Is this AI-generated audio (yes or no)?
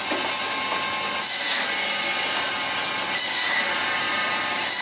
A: no